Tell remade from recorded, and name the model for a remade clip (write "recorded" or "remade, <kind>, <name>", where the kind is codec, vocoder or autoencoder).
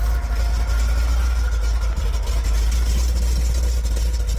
recorded